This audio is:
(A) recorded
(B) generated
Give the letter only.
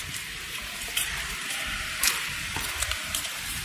B